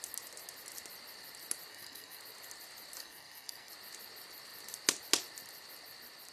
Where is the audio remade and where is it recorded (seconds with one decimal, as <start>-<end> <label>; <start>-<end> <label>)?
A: 0.0-1.7 recorded; 1.7-2.2 remade; 2.2-3.0 recorded; 3.0-3.7 remade; 3.7-6.3 recorded